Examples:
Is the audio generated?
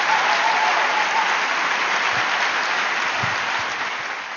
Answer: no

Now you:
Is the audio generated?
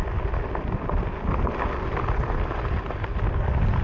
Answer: no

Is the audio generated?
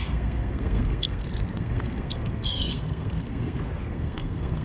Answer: yes